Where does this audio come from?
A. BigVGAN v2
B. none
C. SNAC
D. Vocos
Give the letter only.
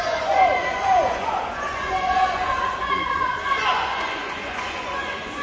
D